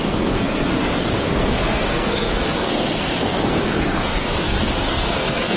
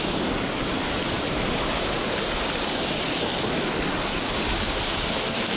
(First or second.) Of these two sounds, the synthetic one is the first